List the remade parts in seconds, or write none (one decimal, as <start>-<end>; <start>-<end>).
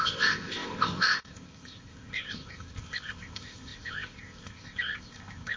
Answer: 0.0-5.6